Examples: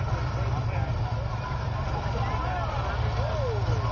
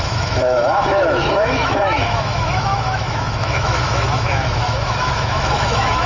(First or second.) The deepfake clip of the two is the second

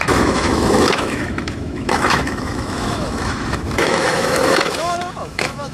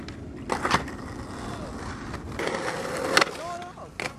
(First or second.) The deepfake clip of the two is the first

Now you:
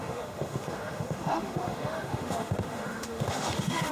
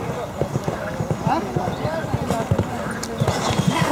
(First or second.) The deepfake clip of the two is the first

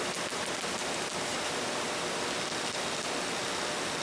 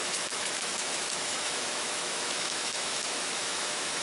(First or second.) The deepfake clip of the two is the second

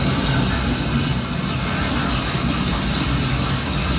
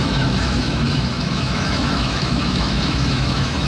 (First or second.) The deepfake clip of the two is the second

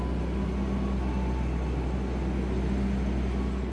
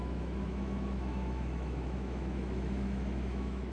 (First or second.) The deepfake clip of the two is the second